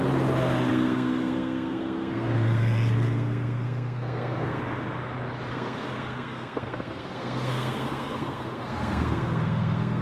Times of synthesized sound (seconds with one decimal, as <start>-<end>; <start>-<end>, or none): 0.7-4.6; 5.5-10.0

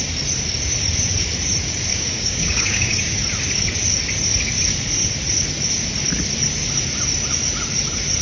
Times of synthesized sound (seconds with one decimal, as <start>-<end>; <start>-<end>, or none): 1.9-3.2

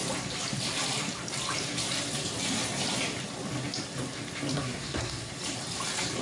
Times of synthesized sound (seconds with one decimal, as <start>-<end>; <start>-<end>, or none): 4.5-5.3

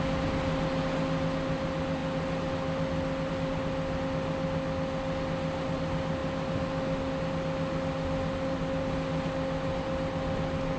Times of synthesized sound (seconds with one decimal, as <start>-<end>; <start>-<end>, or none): none

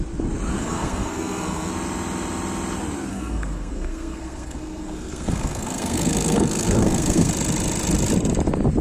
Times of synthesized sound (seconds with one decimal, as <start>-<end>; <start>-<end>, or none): 0.6-1.7; 3.1-7.3

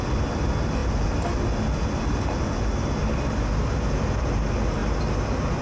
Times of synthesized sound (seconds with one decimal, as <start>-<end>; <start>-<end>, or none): none

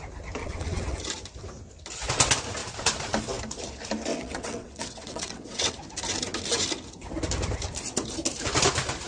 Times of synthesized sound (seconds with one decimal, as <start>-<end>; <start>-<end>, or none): 0.4-1.0; 4.1-5.7